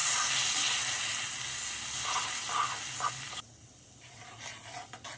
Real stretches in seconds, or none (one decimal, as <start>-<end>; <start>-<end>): 0.0-5.2